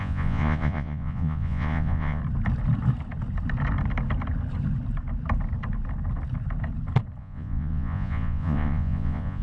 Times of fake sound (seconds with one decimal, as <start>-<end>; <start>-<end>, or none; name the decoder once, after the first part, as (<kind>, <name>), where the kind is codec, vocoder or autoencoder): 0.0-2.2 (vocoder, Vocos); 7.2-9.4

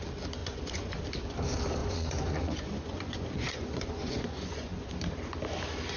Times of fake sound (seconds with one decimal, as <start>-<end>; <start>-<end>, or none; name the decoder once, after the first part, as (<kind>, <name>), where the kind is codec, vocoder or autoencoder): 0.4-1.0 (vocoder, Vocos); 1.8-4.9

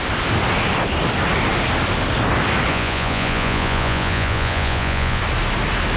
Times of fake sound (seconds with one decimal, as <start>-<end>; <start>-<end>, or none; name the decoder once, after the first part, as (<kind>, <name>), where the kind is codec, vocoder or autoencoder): 2.7-5.2 (vocoder, Vocos)